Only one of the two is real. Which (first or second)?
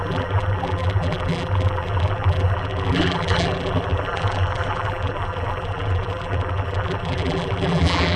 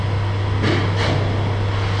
second